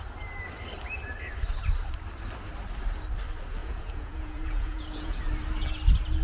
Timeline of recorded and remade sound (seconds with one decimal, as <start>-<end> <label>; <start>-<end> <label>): 0.0-3.6 recorded; 3.6-5.2 remade; 5.2-6.2 recorded